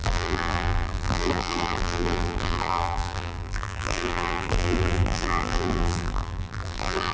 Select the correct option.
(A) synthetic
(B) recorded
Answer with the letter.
A